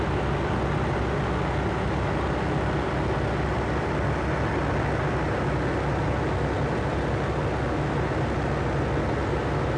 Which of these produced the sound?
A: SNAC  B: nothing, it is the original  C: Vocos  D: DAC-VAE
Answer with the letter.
B